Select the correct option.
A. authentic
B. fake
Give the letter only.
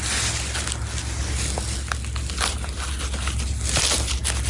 A